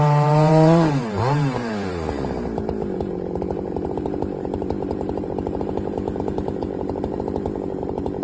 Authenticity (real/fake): fake